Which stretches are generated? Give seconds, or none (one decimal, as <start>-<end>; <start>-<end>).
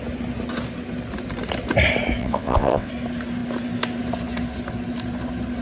2.2-2.9